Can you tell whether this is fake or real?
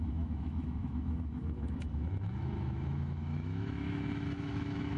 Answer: fake